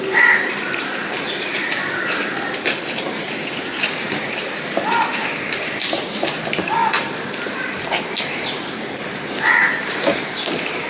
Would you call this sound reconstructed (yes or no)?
yes